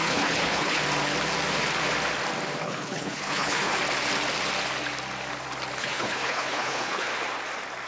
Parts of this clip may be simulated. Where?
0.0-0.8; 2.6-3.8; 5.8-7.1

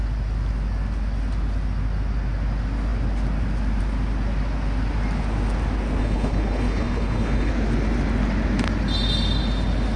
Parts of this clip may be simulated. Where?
6.0-7.5

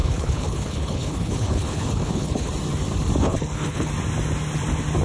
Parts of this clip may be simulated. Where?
0.0-2.5; 3.2-3.9

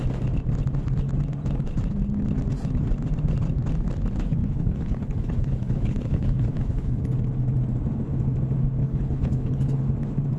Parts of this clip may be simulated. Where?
4.4-7.0; 8.8-9.8

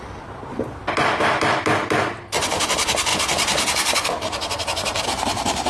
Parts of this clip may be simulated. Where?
none

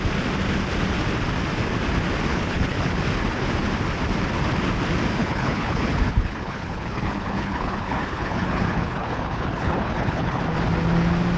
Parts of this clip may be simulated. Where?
2.3-2.9; 5.2-10.4